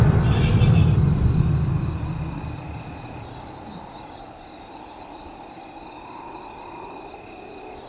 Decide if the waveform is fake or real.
real